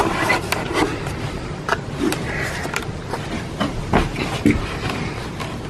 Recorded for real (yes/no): yes